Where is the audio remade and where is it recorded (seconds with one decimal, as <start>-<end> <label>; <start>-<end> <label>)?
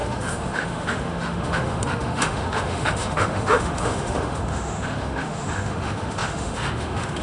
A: 0.0-7.2 remade